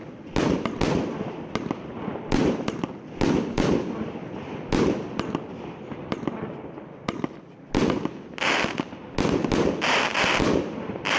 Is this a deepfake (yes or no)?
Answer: no